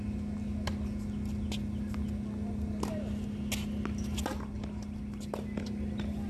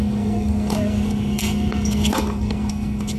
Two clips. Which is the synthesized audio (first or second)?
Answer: second